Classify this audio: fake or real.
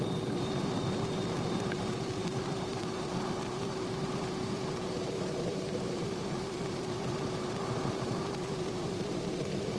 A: fake